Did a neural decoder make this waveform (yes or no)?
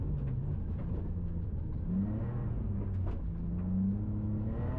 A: no